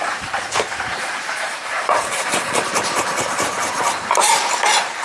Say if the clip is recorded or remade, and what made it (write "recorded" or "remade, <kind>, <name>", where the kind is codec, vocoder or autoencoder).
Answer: remade, vocoder, BigVGAN v2